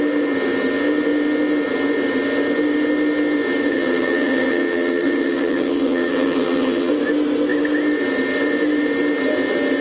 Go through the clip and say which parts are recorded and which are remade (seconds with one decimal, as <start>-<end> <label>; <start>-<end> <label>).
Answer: 0.0-3.7 recorded; 3.7-6.9 remade; 6.9-9.8 recorded